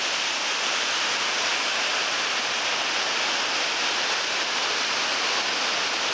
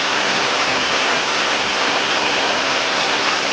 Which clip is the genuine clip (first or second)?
first